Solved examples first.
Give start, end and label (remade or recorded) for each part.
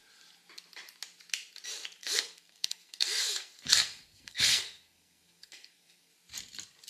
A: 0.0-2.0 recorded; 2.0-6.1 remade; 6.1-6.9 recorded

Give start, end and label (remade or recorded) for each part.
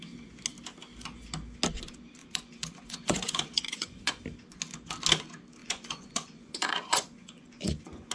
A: 0.0-2.2 recorded; 2.2-4.2 remade; 4.2-5.6 recorded; 5.6-8.1 remade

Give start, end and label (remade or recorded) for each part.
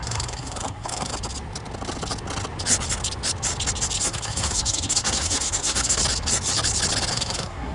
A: 0.0-1.1 remade; 1.1-4.0 recorded; 4.0-6.0 remade; 6.0-7.1 recorded; 7.1-7.7 remade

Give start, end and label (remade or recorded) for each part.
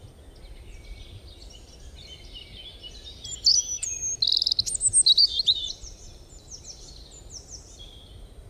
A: 0.0-3.5 recorded; 3.5-4.0 remade; 4.0-5.2 recorded; 5.2-6.6 remade; 6.6-8.5 recorded